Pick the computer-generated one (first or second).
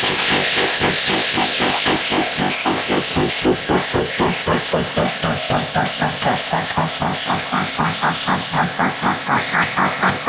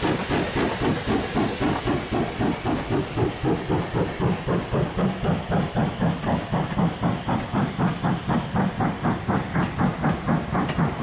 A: first